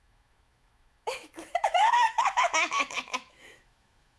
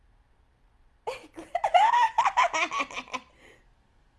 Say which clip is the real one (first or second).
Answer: second